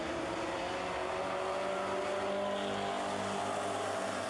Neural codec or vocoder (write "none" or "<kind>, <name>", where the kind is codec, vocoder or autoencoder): none